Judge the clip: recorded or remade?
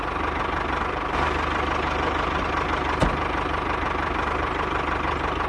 recorded